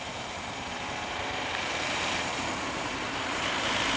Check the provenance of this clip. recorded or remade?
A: remade